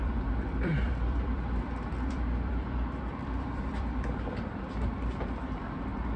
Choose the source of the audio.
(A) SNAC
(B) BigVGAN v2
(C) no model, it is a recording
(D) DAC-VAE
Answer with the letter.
B